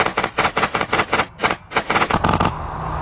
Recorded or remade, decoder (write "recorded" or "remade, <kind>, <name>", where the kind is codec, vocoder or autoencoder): recorded